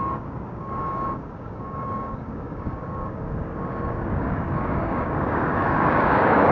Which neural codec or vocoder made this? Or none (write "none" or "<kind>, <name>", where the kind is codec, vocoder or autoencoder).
codec, DAC